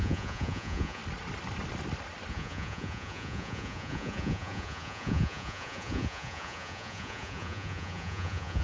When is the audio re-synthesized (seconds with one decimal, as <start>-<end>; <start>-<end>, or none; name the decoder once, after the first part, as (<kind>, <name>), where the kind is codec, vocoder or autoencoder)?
0.0-1.0 (vocoder, Vocos); 2.3-8.6

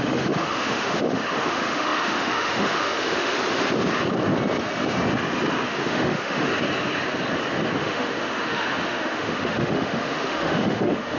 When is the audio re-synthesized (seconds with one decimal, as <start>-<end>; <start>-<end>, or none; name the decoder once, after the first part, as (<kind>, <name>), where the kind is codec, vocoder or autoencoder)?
0.0-3.3 (autoencoder, DAC-VAE); 5.7-6.5; 7.8-11.2

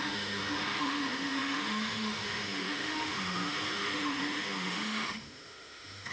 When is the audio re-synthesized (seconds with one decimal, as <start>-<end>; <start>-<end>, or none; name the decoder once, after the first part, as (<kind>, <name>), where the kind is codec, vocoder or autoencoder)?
0.0-6.1 (autoencoder, DAC-VAE)

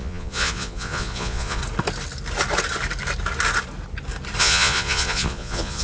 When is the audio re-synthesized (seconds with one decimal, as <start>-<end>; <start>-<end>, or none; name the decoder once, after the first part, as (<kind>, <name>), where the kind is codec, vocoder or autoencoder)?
0.0-1.6 (vocoder, Vocos); 4.4-5.8

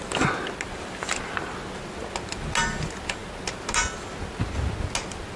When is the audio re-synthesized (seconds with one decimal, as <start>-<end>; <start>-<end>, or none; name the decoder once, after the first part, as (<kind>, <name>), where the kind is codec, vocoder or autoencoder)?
none

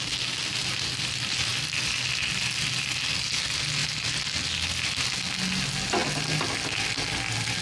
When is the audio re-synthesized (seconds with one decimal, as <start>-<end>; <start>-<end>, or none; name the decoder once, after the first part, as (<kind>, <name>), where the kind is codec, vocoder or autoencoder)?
none

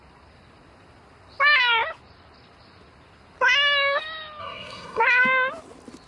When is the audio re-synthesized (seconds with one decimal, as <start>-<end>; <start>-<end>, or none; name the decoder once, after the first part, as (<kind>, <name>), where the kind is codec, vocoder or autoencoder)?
4.4-5.0 (codec, SNAC)